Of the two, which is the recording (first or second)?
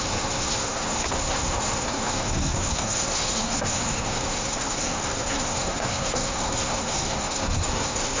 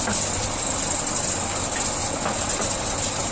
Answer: second